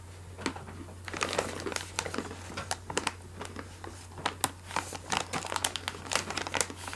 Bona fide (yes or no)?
yes